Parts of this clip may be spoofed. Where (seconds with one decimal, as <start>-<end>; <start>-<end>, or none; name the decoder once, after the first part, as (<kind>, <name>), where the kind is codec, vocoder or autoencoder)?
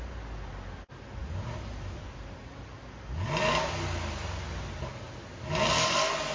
none